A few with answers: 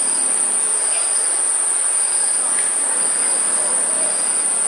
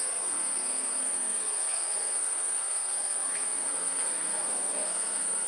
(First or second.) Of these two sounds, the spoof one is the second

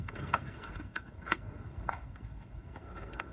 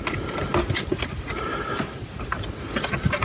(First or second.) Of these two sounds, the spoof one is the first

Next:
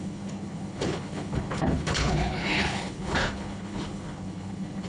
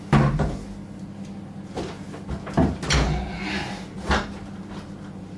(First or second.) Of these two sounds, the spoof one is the first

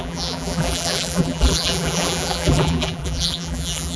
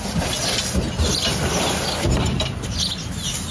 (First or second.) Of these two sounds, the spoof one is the first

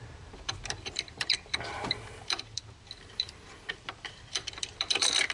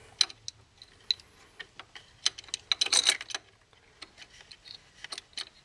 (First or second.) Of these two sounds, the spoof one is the first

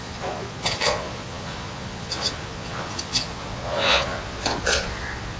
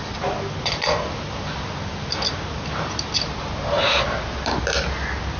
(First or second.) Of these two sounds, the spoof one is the first